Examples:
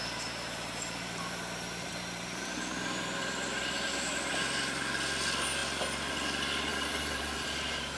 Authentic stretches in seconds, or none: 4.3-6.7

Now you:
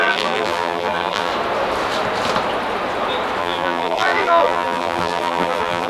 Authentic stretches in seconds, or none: 1.3-3.4

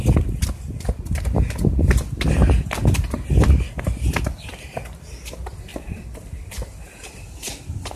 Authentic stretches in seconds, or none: 0.0-5.7; 7.5-8.0

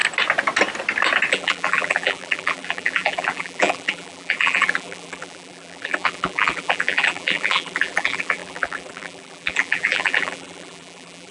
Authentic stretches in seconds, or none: 0.0-1.3

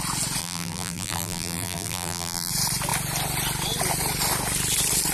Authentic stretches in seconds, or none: 0.0-0.4; 2.5-5.1